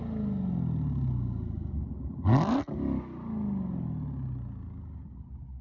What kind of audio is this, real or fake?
real